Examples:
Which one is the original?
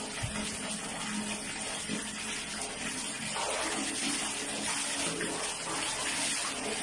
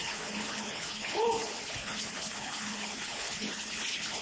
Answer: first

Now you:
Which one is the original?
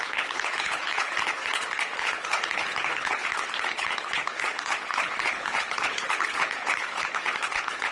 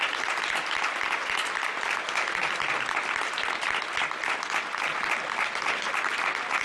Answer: second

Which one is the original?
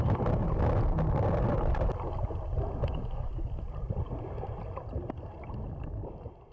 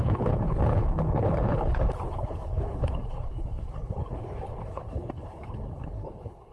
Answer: first